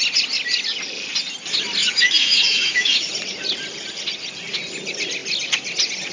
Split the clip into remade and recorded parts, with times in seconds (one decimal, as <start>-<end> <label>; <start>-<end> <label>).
0.0-1.8 recorded; 1.8-3.1 remade; 3.1-6.1 recorded